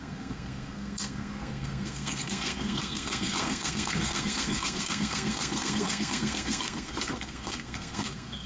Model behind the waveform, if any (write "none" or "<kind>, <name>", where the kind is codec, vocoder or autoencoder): codec, SNAC